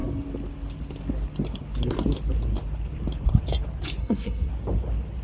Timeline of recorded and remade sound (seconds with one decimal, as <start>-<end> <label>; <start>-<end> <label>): 0.0-4.0 recorded; 4.0-4.5 remade; 4.5-5.2 recorded